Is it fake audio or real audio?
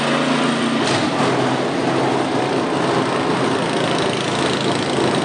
real